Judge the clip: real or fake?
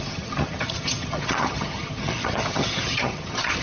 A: fake